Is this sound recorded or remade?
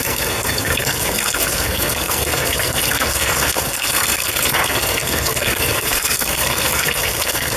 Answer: remade